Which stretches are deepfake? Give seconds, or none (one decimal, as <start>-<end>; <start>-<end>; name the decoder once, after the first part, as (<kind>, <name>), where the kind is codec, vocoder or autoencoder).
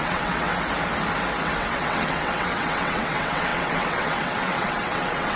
0.0-0.5 (vocoder, WaveNeXt); 1.4-5.4